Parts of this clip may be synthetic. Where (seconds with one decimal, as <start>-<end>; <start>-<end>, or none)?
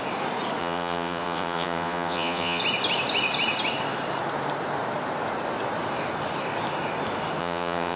0.6-2.6; 7.4-8.0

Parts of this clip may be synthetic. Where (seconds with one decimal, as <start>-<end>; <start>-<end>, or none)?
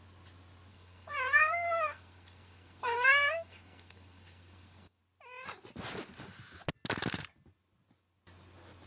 0.7-5.0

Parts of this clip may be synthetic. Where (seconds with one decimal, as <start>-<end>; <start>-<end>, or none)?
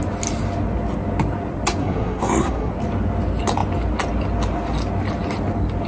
1.8-2.7